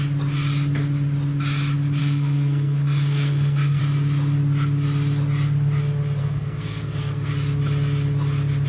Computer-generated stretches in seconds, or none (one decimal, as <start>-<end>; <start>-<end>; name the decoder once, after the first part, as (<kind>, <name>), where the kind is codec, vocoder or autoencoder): 2.0-3.8 (codec, SNAC); 6.2-7.3